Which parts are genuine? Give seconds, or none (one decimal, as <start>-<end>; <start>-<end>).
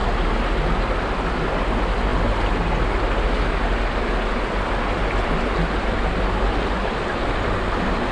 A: 0.0-8.1